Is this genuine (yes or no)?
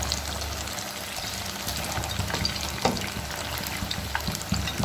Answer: yes